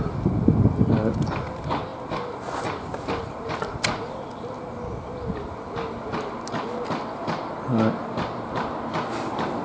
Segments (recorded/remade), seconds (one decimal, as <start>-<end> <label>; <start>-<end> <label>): 0.0-9.6 recorded